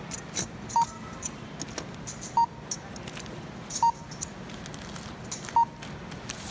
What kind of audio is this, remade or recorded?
recorded